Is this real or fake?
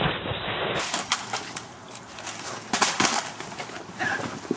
real